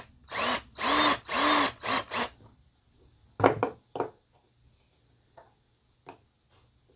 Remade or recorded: recorded